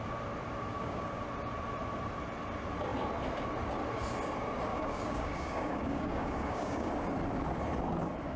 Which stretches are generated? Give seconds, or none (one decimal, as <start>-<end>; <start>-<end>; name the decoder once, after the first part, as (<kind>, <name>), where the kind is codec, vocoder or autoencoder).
0.7-1.2 (codec, DAC); 4.7-6.9